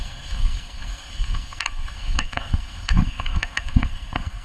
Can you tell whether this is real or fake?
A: fake